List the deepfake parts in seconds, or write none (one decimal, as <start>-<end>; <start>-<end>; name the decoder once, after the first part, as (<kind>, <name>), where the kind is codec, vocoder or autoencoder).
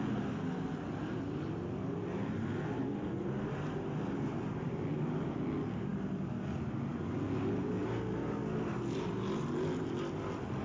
none